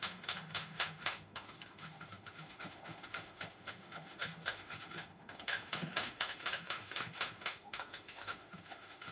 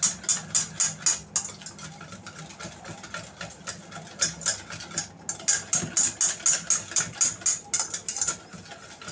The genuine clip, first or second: second